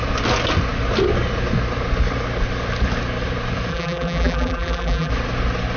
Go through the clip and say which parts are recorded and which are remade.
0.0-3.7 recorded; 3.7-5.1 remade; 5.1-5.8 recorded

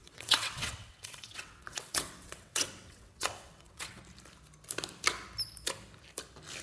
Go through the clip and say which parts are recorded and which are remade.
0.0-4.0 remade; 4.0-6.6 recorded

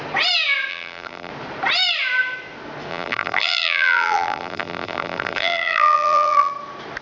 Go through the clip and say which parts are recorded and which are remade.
0.0-0.7 recorded; 0.7-1.3 remade; 1.3-2.9 recorded; 2.9-6.5 remade; 6.5-7.0 recorded